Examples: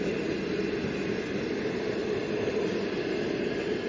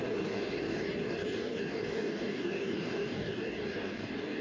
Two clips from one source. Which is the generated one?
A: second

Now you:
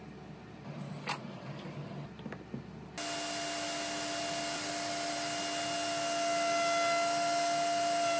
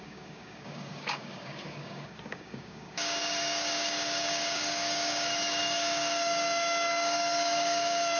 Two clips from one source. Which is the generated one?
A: second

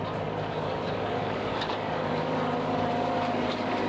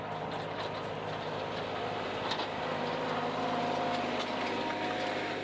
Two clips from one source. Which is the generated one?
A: first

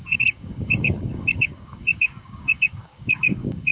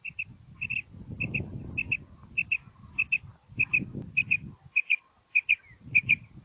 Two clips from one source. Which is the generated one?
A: first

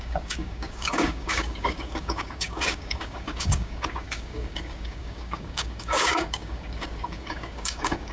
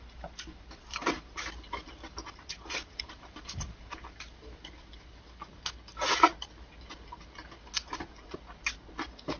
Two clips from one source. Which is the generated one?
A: first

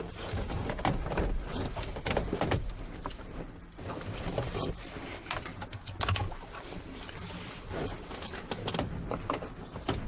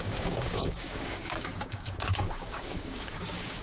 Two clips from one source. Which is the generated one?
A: second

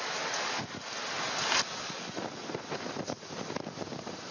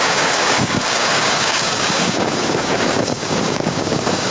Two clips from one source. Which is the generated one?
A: second